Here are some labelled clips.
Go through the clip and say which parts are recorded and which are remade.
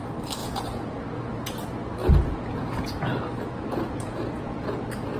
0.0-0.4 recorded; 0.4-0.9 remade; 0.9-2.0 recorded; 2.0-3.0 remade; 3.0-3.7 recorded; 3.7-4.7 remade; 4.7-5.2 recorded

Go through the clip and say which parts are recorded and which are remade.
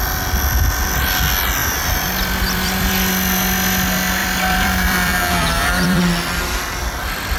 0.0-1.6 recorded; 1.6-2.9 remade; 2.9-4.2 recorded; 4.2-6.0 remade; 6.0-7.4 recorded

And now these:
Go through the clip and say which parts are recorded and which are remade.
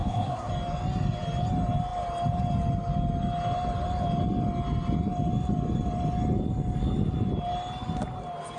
0.0-0.5 remade; 0.5-8.6 recorded